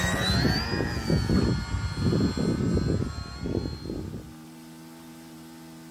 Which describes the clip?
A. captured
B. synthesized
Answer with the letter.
A